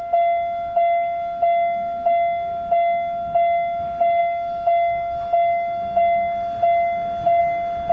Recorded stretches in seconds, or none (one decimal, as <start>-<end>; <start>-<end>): 0.0-7.9